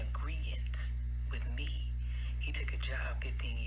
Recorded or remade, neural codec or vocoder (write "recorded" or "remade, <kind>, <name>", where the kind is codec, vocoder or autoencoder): recorded